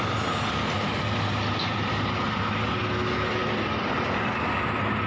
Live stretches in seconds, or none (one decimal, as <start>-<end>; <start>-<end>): 0.0-5.1